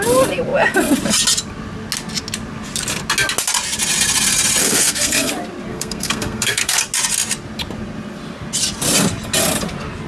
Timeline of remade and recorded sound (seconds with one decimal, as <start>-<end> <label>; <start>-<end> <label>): 0.0-4.6 recorded; 4.6-5.3 remade; 5.3-5.7 recorded; 5.7-6.8 remade; 6.8-10.1 recorded